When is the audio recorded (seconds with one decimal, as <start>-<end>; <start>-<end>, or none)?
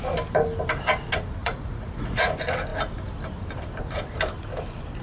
0.0-1.4; 2.3-5.0